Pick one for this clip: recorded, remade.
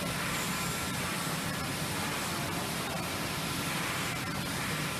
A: recorded